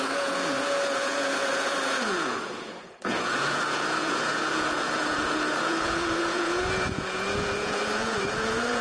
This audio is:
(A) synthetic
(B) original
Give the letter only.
A